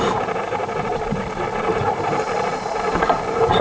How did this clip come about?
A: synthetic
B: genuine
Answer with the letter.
A